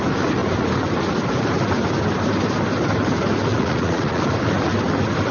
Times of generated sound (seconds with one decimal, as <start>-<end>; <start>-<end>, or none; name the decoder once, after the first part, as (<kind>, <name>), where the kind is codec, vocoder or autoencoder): 3.5-4.2 (vocoder, Vocos)